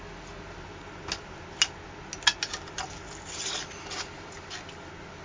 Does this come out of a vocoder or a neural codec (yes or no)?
no